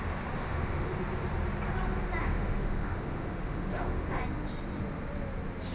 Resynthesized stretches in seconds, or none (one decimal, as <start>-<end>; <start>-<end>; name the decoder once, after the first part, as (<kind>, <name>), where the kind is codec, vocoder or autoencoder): 0.4-0.9 (autoencoder, DAC-VAE); 2.2-4.2